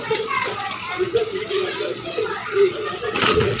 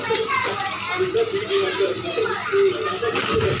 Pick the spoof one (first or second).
first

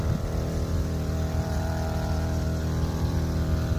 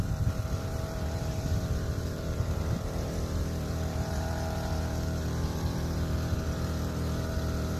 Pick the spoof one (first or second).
second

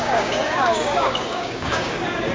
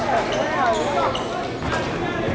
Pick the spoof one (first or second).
first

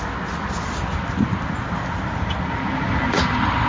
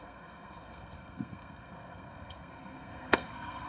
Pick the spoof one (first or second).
second